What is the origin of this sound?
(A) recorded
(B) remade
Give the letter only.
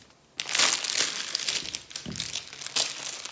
A